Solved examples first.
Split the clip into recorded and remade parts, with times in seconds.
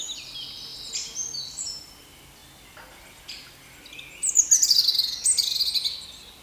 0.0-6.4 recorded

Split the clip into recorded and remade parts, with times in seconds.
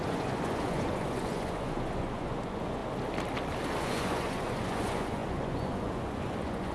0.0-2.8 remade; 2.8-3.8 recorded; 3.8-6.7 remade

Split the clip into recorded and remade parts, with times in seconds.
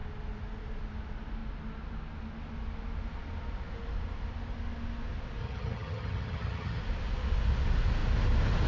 0.0-5.4 recorded; 5.4-6.8 remade; 6.8-8.7 recorded